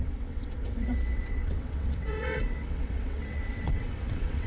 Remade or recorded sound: remade